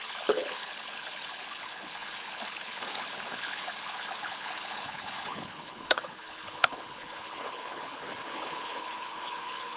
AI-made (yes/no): yes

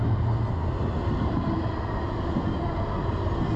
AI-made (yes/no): no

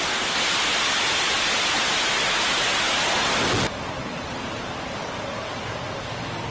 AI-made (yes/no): no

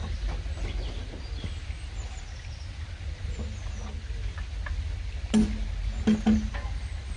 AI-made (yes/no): no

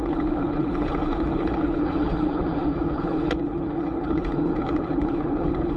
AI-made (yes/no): yes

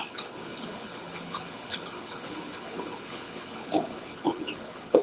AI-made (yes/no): yes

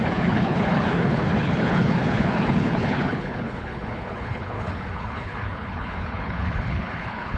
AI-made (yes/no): yes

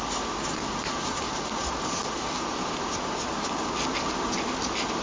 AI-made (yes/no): no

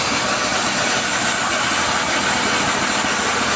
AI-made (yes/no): no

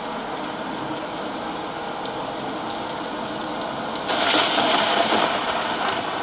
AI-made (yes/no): no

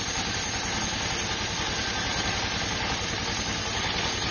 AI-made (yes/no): no